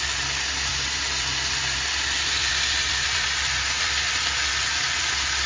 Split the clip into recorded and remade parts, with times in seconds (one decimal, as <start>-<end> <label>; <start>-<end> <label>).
0.0-0.7 recorded; 0.7-4.0 remade; 4.0-5.5 recorded